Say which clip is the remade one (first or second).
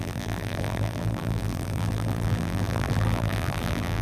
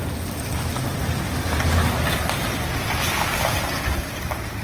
first